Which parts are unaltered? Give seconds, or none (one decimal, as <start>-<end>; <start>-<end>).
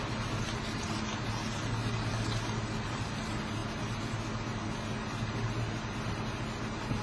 0.0-7.0